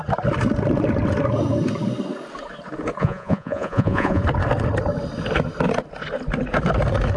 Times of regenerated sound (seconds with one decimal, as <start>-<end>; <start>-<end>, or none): 3.0-4.2

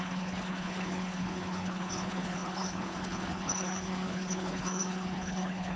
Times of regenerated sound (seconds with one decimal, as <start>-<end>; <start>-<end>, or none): 0.0-5.8